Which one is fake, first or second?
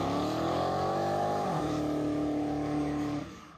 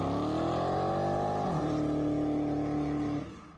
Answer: first